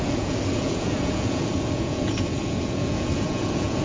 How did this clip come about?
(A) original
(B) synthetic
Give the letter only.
B